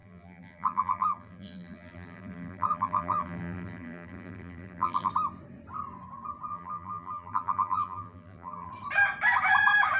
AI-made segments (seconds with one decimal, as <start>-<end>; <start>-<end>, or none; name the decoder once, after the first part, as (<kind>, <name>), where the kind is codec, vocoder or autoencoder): 0.0-5.1 (vocoder, BigVGAN v2); 6.5-8.7